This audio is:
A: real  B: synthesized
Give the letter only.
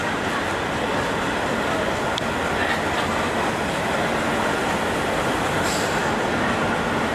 A